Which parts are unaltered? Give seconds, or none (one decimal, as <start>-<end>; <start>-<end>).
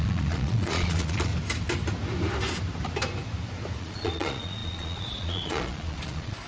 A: 1.3-3.8